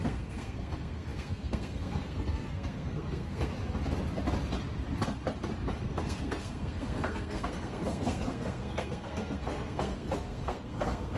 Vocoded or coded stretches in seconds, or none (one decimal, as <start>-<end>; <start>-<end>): 0.0-3.5; 5.8-11.2